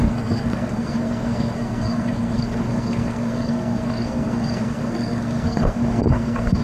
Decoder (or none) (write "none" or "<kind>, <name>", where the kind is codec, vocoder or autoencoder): codec, SNAC